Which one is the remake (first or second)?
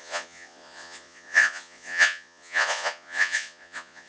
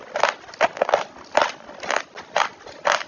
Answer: first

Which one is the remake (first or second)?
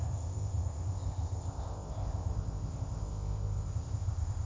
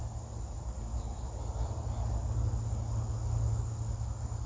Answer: first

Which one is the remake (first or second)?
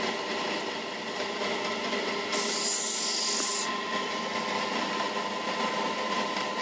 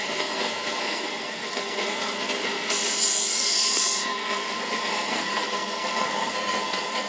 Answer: second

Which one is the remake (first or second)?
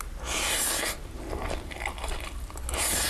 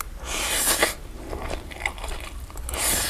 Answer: second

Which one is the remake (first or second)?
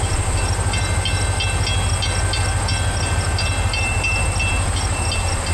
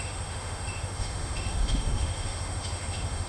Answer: second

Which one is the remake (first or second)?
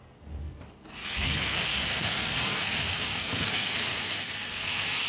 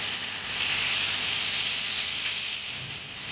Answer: first